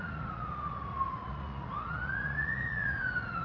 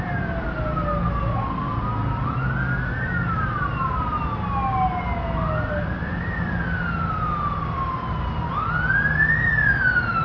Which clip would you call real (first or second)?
second